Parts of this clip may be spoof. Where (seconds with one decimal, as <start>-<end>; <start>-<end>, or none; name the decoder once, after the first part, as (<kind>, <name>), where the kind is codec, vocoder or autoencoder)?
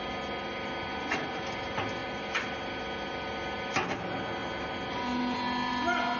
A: none